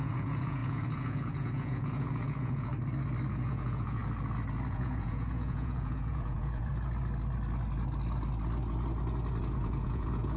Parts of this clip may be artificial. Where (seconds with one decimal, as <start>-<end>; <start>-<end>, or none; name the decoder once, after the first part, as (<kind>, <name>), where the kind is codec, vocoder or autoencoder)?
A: 0.0-2.7 (vocoder, Vocos); 3.3-4.0; 4.7-6.7; 9.4-10.4